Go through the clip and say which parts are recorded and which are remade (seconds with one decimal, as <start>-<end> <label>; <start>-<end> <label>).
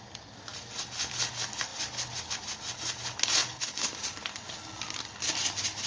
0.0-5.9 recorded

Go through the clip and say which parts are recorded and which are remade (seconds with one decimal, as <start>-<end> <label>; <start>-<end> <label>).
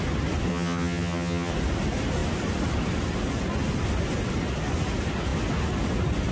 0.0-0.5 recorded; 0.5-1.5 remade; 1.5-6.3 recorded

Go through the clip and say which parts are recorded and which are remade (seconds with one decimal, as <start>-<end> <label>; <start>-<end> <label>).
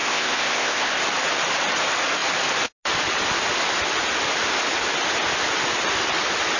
0.0-1.0 remade; 1.0-6.6 recorded